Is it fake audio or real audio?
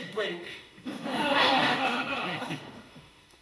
fake